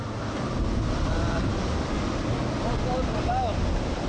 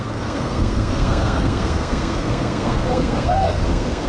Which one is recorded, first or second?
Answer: first